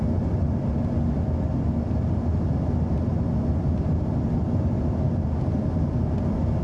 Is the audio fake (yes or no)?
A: no